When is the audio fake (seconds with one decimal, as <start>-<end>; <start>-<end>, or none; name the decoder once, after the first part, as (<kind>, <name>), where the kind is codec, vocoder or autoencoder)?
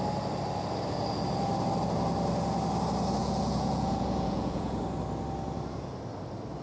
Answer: 3.2-4.8 (vocoder, Vocos)